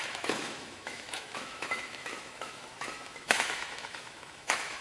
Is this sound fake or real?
fake